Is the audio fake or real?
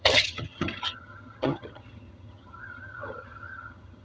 fake